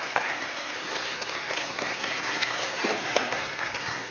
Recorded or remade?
remade